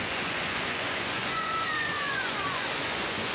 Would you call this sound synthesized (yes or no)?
yes